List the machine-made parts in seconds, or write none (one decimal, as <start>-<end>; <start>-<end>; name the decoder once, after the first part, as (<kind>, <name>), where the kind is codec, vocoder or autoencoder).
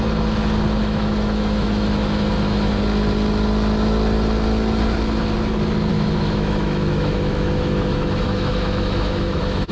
0.8-2.7 (autoencoder, DAC-VAE); 5.9-9.7